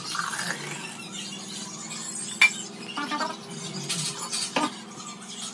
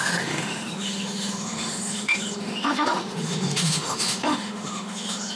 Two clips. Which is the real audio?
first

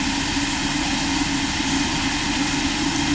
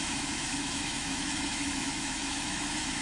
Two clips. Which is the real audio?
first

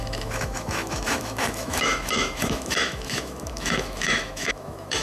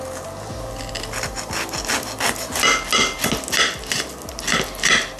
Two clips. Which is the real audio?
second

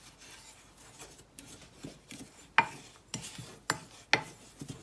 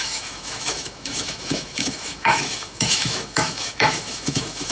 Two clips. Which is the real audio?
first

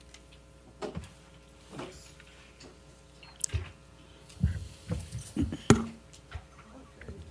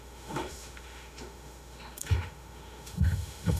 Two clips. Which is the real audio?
first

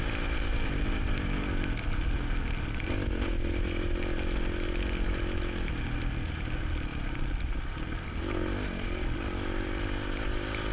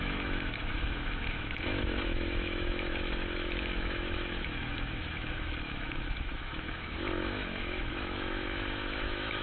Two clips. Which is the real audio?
first